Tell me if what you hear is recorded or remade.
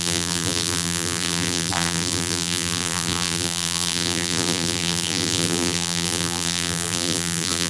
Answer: remade